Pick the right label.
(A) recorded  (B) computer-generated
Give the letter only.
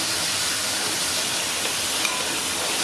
A